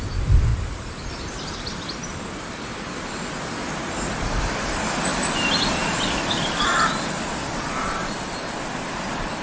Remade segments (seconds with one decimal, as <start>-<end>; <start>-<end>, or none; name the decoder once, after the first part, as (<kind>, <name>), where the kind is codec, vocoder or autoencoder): 0.0-9.4 (vocoder, BigVGAN v2)